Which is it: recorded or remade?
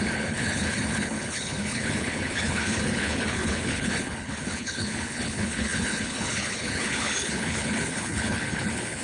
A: remade